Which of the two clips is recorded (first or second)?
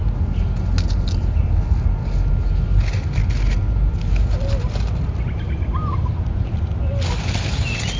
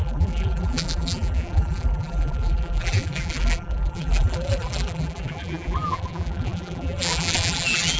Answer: first